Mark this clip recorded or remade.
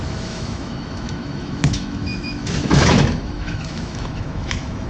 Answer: remade